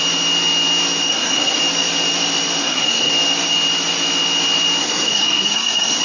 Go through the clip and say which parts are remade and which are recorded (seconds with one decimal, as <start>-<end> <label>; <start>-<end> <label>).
0.0-1.1 recorded; 1.1-1.6 remade; 1.6-2.6 recorded; 2.6-3.1 remade; 3.1-4.8 recorded; 4.8-6.0 remade